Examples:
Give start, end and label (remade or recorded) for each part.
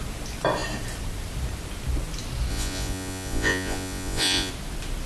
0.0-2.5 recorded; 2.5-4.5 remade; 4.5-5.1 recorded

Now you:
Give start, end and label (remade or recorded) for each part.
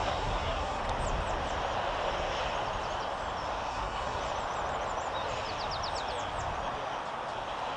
0.0-0.8 remade; 0.8-3.7 recorded; 3.7-4.2 remade; 4.2-7.8 recorded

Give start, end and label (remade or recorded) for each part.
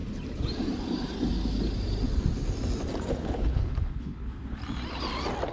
0.0-3.2 recorded; 3.2-4.6 remade; 4.6-5.5 recorded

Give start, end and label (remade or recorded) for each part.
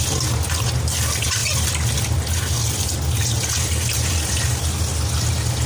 0.0-5.7 recorded